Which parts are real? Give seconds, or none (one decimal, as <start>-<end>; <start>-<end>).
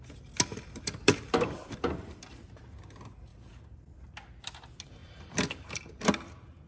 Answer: 0.0-0.5; 2.4-3.3; 4.0-5.0; 5.9-6.7